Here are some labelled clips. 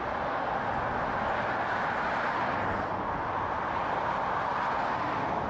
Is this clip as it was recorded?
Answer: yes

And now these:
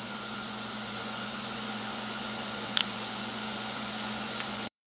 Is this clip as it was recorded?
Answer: no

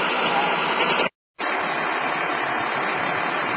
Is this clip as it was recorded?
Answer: yes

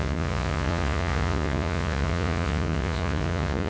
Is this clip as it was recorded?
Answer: no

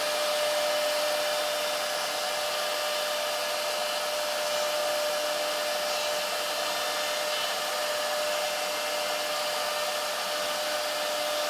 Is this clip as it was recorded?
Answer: yes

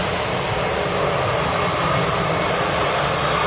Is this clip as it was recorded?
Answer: yes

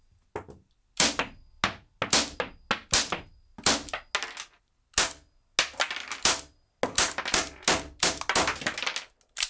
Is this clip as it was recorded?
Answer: yes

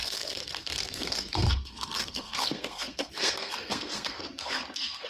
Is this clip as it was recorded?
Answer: no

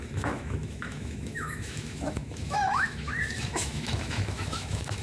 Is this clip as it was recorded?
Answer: no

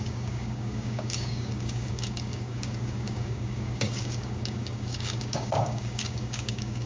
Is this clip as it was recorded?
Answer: no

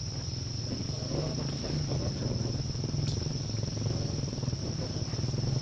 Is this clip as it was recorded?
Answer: yes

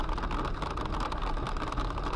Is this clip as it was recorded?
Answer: yes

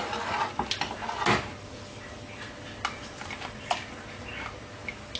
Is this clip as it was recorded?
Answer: yes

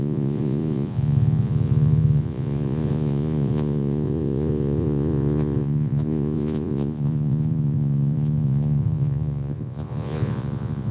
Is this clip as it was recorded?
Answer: no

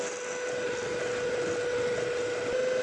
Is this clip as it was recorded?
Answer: yes